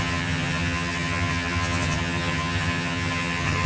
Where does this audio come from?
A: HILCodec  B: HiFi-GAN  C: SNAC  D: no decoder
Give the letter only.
B